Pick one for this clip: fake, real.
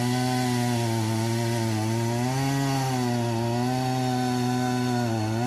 real